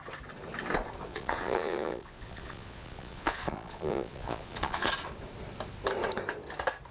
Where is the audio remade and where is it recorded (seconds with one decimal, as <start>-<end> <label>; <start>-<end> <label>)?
0.0-1.1 recorded; 1.1-4.9 remade; 4.9-6.9 recorded